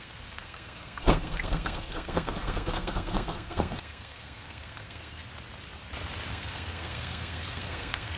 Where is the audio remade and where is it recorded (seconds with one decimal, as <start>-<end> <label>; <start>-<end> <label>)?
0.0-5.2 remade; 5.2-6.3 recorded; 6.3-8.2 remade